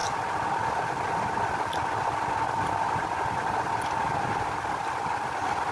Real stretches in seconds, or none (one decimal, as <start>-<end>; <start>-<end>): 0.0-5.7